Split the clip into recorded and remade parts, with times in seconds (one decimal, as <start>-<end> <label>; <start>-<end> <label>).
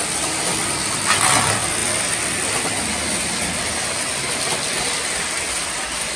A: 0.0-6.2 recorded